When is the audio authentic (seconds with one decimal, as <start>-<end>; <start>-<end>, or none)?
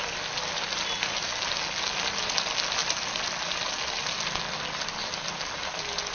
0.0-6.1